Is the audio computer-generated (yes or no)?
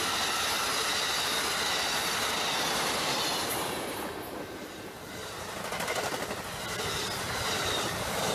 no